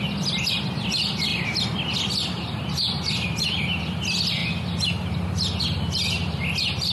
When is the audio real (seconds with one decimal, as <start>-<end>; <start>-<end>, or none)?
0.0-6.9